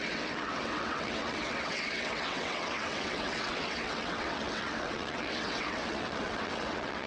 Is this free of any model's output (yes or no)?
no